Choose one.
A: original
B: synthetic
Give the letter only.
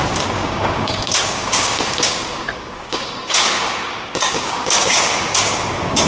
B